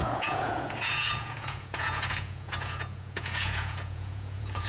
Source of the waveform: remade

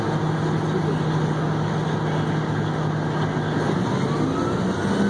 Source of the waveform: recorded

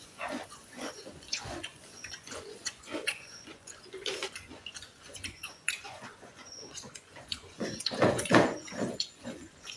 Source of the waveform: remade